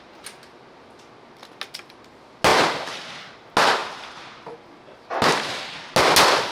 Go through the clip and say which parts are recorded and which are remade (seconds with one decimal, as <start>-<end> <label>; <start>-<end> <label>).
0.0-6.5 recorded